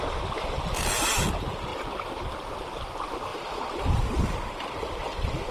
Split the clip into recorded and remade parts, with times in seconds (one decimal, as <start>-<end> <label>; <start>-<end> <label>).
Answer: 0.0-1.7 remade; 1.7-2.5 recorded; 2.5-5.5 remade